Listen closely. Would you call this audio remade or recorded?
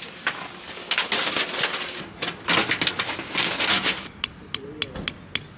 recorded